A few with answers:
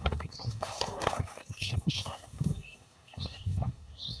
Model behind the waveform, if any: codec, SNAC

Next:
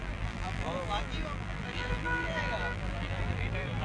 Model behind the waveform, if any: vocoder, BigVGAN v2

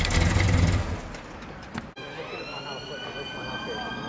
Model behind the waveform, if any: none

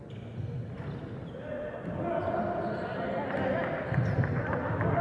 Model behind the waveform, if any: none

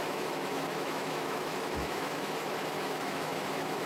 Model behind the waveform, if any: autoencoder, DAC-VAE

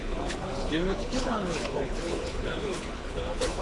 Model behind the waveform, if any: codec, HILCodec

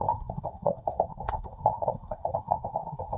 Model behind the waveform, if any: codec, SNAC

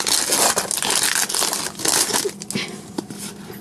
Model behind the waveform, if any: none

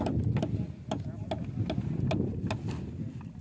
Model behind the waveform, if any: none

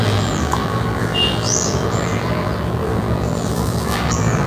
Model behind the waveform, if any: vocoder, BigVGAN v2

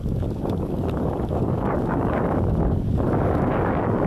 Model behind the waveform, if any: codec, DAC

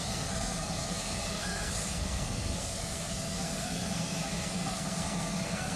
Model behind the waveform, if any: codec, SNAC